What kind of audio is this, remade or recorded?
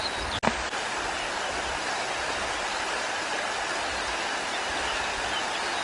recorded